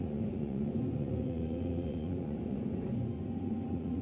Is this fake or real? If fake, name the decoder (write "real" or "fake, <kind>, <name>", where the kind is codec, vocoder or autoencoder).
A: fake, vocoder, Vocos